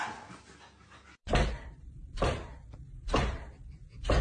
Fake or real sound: fake